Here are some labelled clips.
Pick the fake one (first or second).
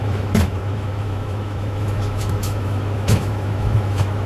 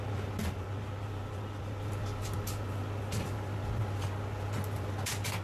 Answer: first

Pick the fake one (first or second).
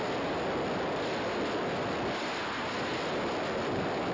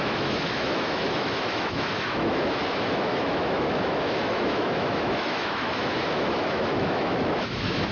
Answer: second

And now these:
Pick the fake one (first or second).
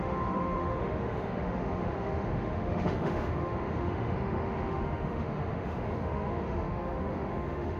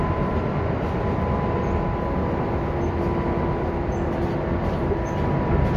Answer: first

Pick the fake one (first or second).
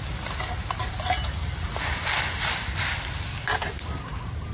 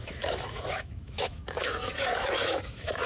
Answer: second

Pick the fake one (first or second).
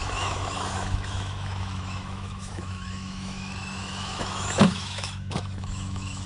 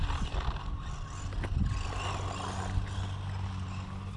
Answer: first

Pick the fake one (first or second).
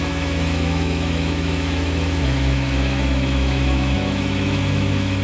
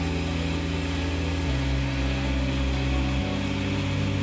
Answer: first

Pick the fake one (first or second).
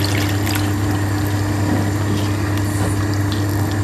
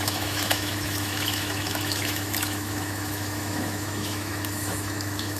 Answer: second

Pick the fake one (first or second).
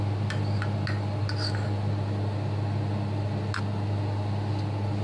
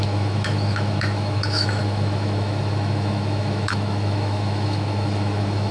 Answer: second